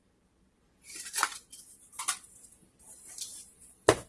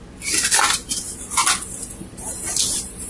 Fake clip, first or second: first